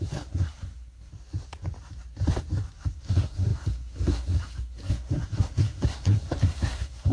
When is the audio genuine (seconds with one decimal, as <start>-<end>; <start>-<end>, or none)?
1.1-2.9